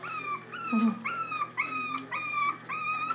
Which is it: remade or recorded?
recorded